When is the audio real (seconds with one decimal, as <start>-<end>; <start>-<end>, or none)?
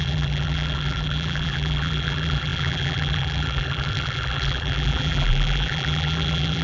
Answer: none